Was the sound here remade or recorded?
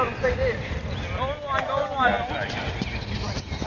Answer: recorded